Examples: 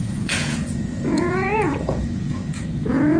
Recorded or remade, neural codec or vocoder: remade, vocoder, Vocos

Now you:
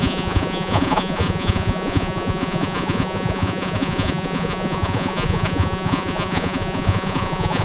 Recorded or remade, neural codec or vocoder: remade, vocoder, Vocos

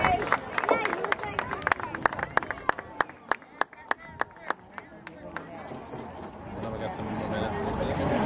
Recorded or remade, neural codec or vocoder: recorded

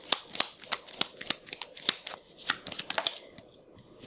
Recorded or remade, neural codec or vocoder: recorded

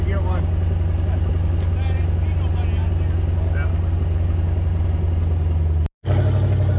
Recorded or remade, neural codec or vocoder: recorded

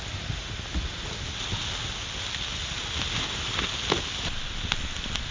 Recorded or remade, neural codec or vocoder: recorded